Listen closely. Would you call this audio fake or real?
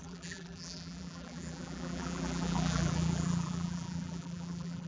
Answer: fake